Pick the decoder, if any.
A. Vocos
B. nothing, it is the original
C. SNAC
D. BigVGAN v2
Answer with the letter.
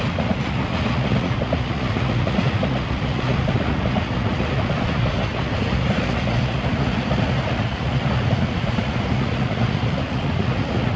A